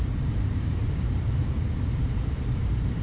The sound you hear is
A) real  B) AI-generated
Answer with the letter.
B